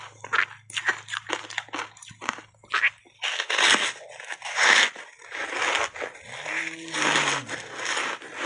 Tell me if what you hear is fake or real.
real